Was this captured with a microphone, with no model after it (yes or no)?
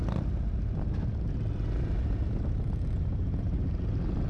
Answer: yes